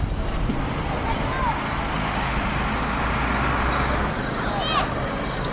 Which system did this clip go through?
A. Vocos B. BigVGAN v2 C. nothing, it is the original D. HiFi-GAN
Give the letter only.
C